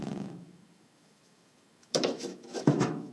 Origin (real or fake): fake